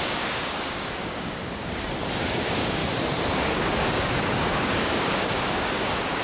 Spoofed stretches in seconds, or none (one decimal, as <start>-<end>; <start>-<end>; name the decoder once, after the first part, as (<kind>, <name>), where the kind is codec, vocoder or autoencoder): 0.0-1.6 (codec, DAC); 2.2-2.8; 3.4-6.2